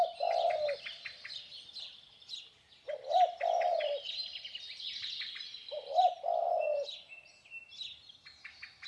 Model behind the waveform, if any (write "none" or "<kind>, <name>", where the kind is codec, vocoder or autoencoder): none